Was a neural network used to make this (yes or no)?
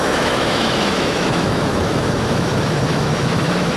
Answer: yes